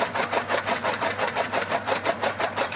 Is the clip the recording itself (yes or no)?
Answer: no